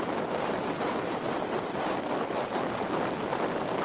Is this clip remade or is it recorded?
recorded